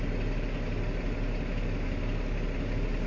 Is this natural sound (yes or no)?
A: yes